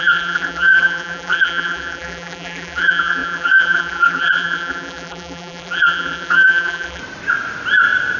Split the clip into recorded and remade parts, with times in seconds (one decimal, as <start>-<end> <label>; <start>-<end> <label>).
0.0-7.0 remade; 7.0-8.2 recorded